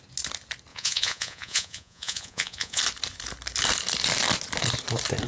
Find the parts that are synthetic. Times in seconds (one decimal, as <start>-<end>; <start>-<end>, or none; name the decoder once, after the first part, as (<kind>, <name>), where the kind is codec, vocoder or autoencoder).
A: 0.7-2.8 (vocoder, Vocos)